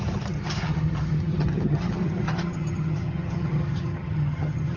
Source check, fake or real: fake